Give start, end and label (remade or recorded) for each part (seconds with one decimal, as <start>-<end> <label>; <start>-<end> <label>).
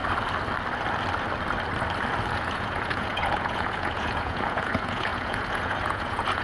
0.0-2.3 recorded; 2.3-6.4 remade